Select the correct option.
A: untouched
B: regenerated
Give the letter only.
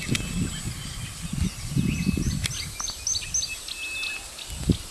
A